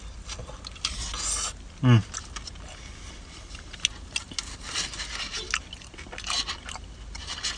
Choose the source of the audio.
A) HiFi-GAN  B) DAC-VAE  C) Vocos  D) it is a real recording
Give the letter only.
D